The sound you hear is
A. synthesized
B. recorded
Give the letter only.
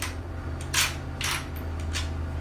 B